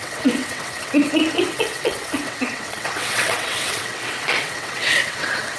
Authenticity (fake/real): fake